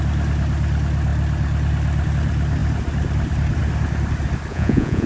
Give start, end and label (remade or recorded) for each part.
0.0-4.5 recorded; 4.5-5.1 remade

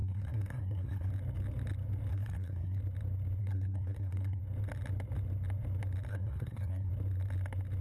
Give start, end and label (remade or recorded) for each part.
0.0-1.1 remade; 1.1-2.1 recorded; 2.1-2.8 remade; 2.8-3.4 recorded; 3.4-4.4 remade; 4.4-6.1 recorded; 6.1-6.9 remade; 6.9-7.8 recorded

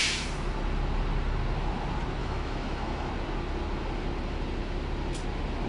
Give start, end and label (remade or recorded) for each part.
0.0-2.2 recorded; 2.2-3.1 remade; 3.1-5.7 recorded

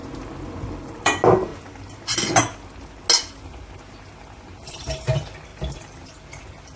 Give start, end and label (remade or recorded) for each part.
0.0-0.7 recorded; 0.7-1.5 remade; 1.5-4.9 recorded; 4.9-6.8 remade

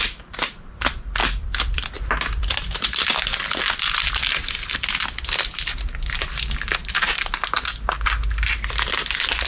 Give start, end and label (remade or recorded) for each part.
0.0-1.2 recorded; 1.2-3.1 remade; 3.1-9.5 recorded

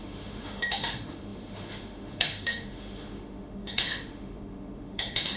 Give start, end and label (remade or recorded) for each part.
0.0-5.4 remade